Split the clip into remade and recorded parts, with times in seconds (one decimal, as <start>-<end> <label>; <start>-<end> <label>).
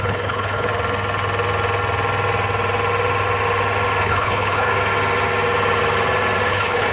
0.0-0.7 remade; 0.7-4.0 recorded; 4.0-4.7 remade; 4.7-6.5 recorded; 6.5-6.9 remade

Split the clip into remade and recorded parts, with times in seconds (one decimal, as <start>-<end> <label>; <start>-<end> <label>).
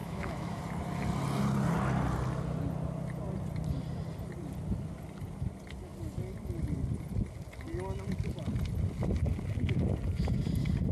0.0-0.6 remade; 0.6-10.9 recorded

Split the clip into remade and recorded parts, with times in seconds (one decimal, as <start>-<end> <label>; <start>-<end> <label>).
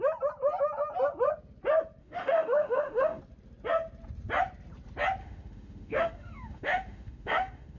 0.0-2.0 recorded; 2.0-3.2 remade; 3.2-5.2 recorded; 5.2-7.8 remade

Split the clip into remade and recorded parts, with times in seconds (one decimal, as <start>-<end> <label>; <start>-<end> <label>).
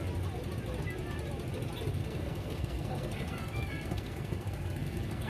0.0-1.9 recorded; 1.9-5.3 remade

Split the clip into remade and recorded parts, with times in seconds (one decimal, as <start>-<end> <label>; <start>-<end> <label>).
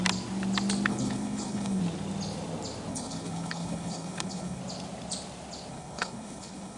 0.0-0.9 recorded; 0.9-1.8 remade; 1.8-2.9 recorded; 2.9-4.6 remade; 4.6-5.7 recorded; 5.7-6.8 remade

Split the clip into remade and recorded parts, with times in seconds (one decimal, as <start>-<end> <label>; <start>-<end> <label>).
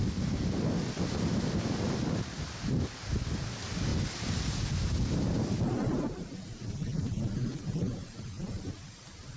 0.0-9.4 recorded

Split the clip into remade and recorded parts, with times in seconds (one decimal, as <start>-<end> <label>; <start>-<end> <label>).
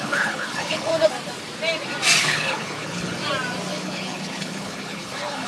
0.0-0.9 remade; 0.9-2.2 recorded; 2.2-3.2 remade; 3.2-3.7 recorded; 3.7-5.5 remade